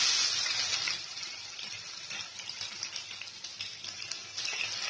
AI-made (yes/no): no